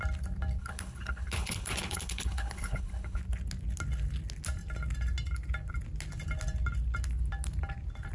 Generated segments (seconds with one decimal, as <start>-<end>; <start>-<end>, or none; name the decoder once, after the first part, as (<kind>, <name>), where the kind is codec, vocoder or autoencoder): 0.6-3.2 (codec, HILCodec)